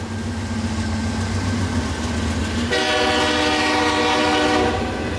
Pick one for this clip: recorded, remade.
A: recorded